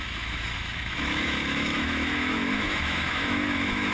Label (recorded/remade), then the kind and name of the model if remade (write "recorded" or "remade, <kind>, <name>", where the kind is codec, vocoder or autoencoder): remade, autoencoder, DAC-VAE